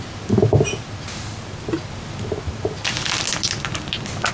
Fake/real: real